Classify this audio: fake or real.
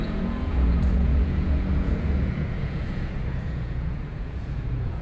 fake